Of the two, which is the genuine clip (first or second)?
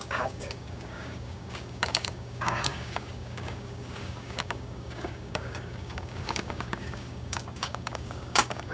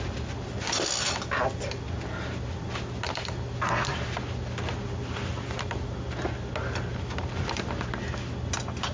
second